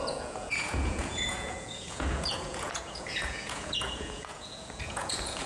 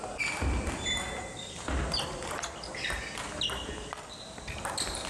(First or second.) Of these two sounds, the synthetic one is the first